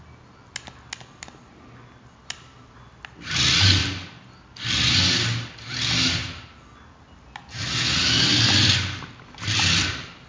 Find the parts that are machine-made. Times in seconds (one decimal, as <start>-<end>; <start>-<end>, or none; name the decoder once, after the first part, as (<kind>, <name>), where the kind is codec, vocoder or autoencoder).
3.8-6.2 (vocoder, BigVGAN v2)